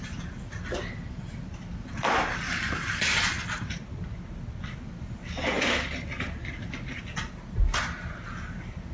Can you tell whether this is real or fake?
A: real